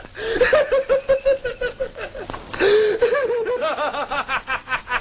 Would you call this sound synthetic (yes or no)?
no